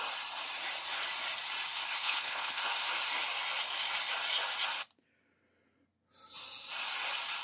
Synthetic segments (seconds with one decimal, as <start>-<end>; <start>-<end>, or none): 2.0-2.6